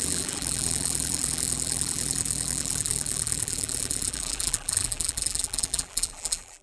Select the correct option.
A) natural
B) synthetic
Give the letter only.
B